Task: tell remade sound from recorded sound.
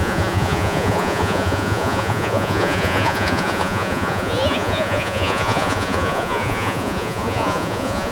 remade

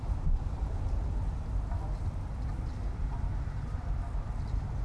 remade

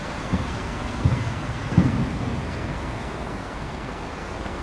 remade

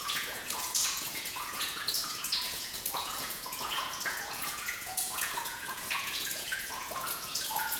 remade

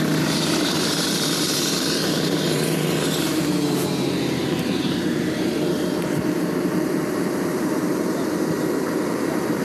remade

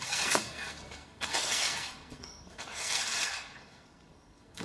remade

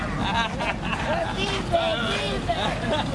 recorded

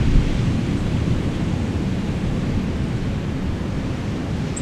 recorded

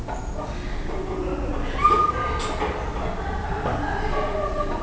recorded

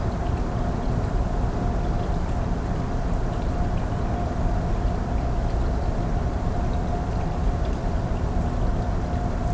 recorded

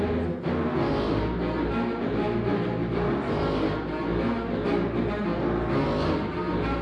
recorded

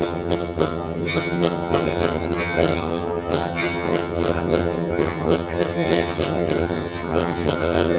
remade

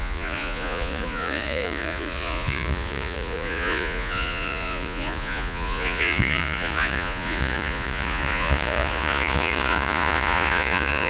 remade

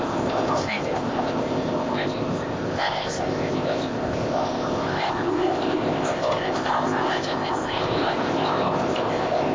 remade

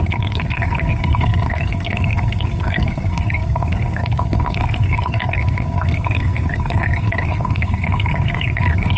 remade